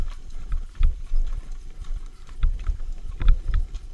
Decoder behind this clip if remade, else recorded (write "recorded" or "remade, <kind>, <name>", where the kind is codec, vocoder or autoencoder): remade, vocoder, BigVGAN v2